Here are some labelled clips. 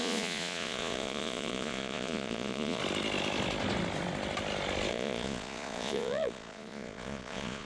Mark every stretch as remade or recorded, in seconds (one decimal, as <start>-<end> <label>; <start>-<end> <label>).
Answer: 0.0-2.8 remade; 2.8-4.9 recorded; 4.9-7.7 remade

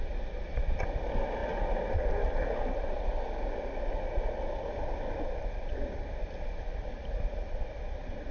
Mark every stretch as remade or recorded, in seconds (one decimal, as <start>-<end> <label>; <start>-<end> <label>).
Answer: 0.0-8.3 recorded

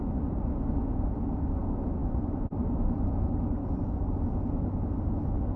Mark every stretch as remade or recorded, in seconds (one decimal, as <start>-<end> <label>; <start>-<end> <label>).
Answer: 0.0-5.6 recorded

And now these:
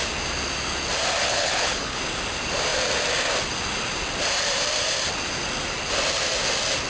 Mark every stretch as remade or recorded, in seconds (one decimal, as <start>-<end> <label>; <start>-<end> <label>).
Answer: 0.0-1.2 recorded; 1.2-2.0 remade; 2.0-6.9 recorded